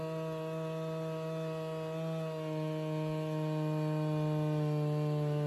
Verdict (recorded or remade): recorded